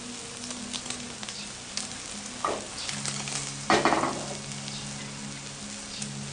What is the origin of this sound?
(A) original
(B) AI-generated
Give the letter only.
A